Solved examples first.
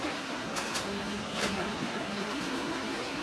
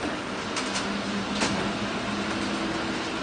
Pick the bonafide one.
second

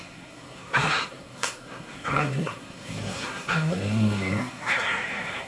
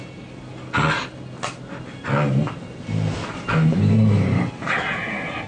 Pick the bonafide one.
second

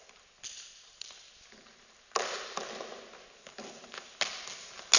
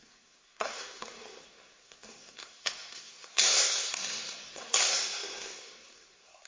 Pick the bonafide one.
first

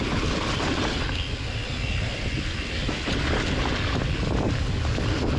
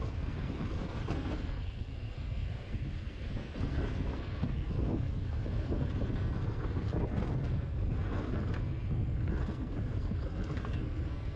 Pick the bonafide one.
first